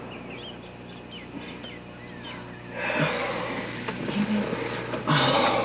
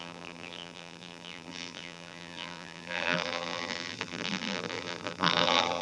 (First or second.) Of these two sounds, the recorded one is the first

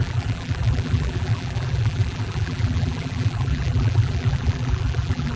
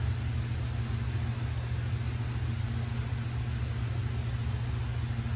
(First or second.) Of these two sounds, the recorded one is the second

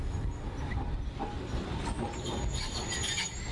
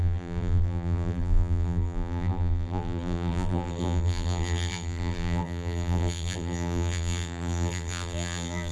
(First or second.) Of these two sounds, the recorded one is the first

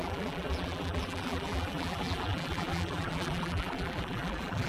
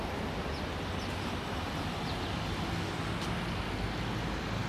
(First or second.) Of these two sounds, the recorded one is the second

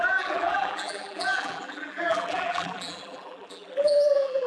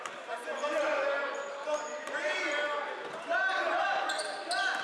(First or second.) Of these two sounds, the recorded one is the second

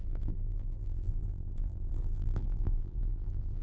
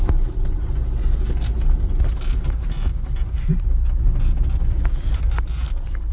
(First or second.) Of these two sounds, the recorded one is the second